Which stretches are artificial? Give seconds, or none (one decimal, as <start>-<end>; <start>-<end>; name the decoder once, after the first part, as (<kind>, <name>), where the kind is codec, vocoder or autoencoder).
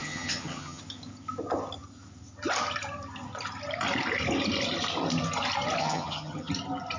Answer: 0.0-0.8 (vocoder, HiFi-GAN); 5.8-6.5